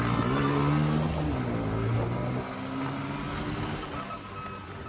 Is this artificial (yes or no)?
no